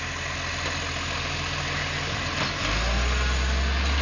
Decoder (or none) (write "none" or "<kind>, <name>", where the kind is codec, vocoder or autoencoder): none